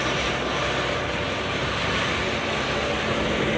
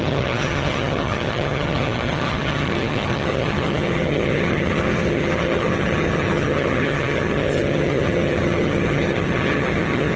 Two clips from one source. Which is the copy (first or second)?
second